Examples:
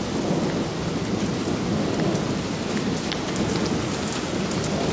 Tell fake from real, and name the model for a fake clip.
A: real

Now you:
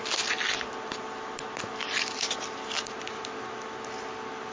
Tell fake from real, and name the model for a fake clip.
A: real